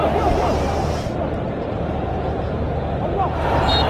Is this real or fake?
fake